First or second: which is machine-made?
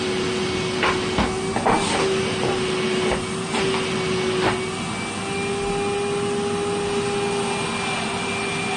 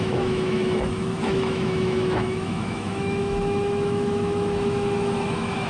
second